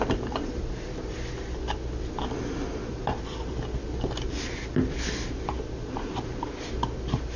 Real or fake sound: real